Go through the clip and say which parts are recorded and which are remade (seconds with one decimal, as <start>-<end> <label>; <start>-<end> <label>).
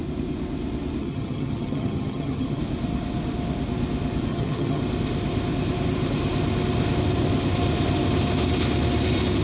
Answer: 0.0-1.0 recorded; 1.0-2.6 remade; 2.6-4.3 recorded; 4.3-4.8 remade; 4.8-9.4 recorded